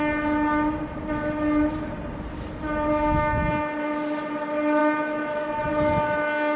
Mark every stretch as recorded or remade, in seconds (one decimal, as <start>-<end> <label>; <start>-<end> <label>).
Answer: 0.0-6.6 recorded